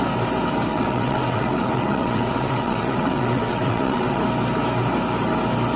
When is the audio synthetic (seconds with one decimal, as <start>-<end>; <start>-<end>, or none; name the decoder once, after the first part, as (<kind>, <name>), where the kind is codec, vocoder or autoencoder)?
0.7-4.2 (vocoder, WaveNeXt)